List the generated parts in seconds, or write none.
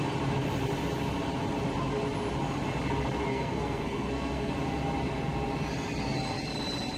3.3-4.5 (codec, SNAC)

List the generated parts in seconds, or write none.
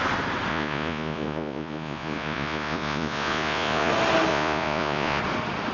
0.5-3.9 (vocoder, Vocos); 4.3-5.2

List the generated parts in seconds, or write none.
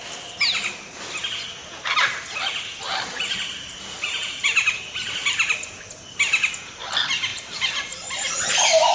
1.6-4.8 (vocoder, BigVGAN v2); 5.2-5.9; 7.3-8.5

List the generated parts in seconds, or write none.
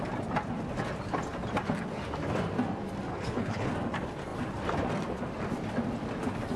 3.1-3.7 (codec, HILCodec)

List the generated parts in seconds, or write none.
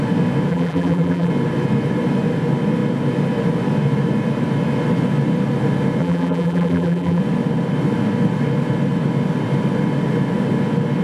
0.5-1.3 (vocoder, BigVGAN v2); 6.0-7.2